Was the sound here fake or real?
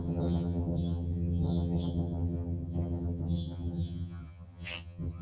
fake